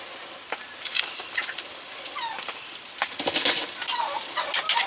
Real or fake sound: real